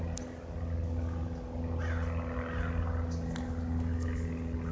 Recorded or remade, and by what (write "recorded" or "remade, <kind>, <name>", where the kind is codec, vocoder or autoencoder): recorded